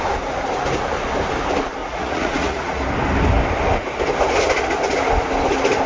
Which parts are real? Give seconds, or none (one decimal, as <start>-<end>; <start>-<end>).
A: 0.0-1.8; 2.8-5.9